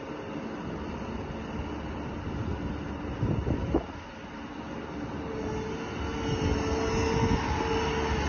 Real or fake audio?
real